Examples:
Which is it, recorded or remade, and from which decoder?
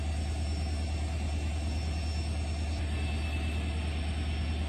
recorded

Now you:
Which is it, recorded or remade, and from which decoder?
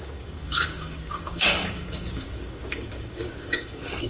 remade, codec, DAC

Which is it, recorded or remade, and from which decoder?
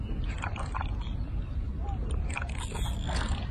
recorded